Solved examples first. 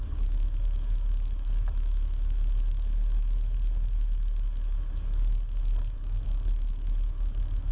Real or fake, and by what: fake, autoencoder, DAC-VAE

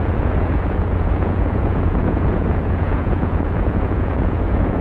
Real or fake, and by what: fake, vocoder, Vocos